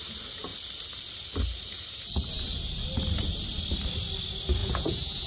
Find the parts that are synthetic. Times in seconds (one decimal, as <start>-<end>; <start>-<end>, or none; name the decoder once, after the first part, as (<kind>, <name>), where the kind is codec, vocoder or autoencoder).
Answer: 4.6-5.3 (vocoder, Vocos)